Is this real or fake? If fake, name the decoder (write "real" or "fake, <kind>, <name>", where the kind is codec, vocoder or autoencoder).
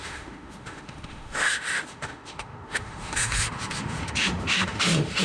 fake, autoencoder, DAC-VAE